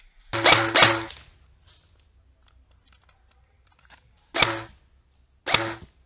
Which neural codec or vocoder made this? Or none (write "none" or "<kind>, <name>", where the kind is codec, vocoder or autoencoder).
none